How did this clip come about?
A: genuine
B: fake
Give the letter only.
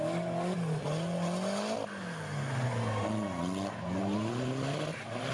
A